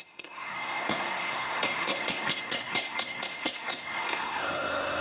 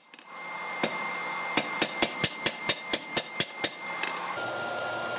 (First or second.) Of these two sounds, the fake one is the first